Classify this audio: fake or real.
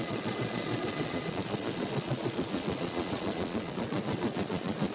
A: fake